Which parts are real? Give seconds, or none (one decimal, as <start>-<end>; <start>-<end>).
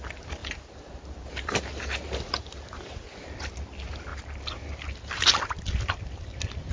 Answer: 0.0-6.7